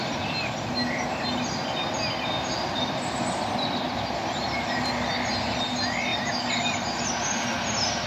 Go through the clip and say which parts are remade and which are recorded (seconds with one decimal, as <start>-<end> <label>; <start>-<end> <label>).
0.0-8.1 recorded